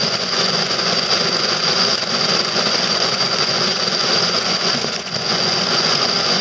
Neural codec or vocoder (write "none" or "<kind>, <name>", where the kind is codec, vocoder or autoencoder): vocoder, Vocos